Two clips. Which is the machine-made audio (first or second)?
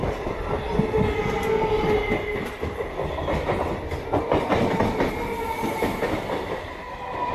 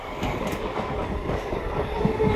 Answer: second